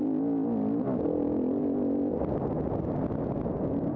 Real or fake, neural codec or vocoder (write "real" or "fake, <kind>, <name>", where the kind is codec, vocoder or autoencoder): real